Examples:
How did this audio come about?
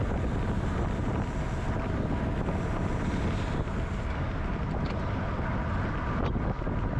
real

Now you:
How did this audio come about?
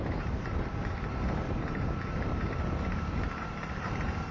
fake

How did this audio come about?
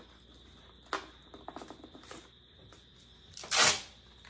real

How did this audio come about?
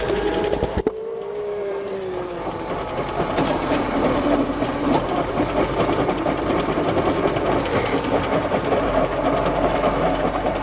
fake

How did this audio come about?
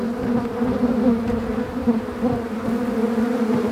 real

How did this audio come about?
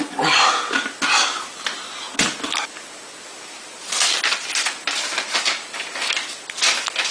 real